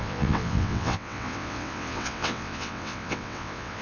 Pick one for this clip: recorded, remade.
remade